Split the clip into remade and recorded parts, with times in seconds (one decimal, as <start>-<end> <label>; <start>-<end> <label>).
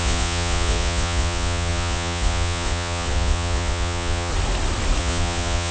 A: 0.0-4.3 remade; 4.3-5.0 recorded; 5.0-5.7 remade